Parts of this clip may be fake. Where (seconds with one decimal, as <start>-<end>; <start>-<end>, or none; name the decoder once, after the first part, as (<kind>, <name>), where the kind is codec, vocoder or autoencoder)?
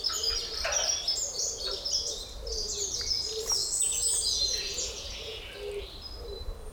3.6-5.4 (vocoder, Vocos)